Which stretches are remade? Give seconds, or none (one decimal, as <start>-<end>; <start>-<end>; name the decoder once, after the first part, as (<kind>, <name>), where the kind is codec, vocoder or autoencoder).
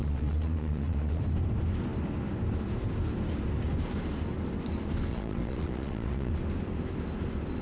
0.0-1.2 (vocoder, Vocos); 5.1-6.3